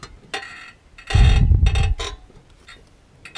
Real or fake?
real